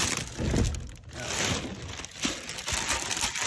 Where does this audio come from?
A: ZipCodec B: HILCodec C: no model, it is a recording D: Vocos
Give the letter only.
C